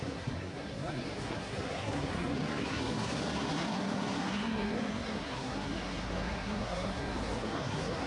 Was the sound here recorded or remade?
remade